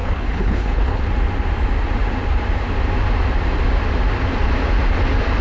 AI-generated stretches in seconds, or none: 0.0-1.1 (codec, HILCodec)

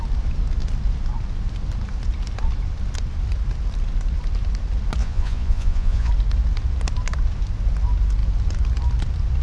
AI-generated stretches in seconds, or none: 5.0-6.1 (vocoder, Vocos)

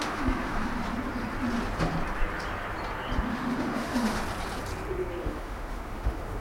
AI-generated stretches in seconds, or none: 0.0-0.7 (autoencoder, DAC-VAE); 3.3-4.2; 5.2-6.4